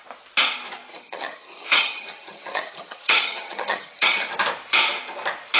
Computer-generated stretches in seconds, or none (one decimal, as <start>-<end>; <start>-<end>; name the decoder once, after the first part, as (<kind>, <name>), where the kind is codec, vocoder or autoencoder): 0.9-4.3 (vocoder, HiFi-GAN)